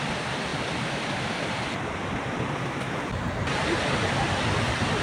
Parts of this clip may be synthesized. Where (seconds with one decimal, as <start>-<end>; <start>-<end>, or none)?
none